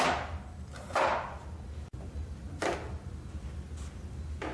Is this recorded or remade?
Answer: recorded